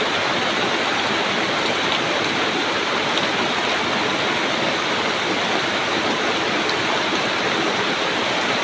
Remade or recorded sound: remade